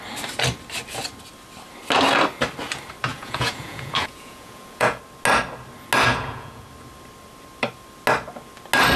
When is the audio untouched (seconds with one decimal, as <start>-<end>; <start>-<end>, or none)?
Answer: 0.0-3.1; 5.0-6.1; 6.7-9.0